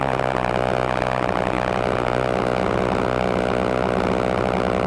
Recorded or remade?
recorded